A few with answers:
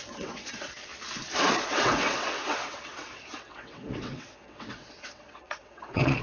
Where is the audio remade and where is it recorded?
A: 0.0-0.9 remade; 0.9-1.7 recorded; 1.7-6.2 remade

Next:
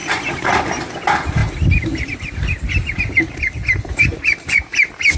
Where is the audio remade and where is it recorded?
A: 0.0-5.2 recorded

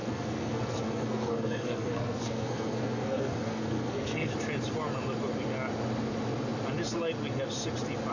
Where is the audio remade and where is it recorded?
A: 0.0-4.3 remade; 4.3-8.1 recorded

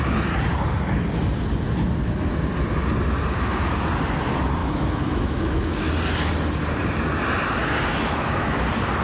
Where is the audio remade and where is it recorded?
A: 0.0-4.6 recorded; 4.6-5.9 remade; 5.9-7.9 recorded; 7.9-8.6 remade; 8.6-9.0 recorded